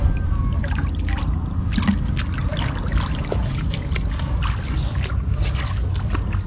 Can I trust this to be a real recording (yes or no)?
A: yes